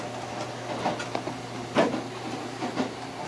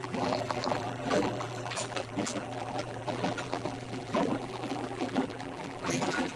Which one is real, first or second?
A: first